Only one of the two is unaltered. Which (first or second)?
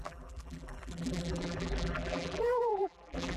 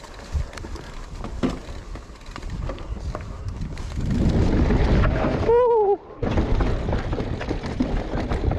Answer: second